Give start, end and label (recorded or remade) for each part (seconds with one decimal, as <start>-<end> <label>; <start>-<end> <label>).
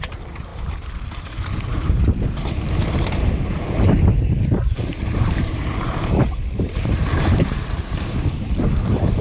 0.0-9.2 remade